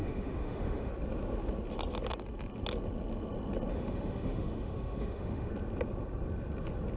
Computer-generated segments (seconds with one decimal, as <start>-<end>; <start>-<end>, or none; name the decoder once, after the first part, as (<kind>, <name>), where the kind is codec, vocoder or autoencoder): 0.0-0.9 (autoencoder, DAC-VAE); 3.7-5.5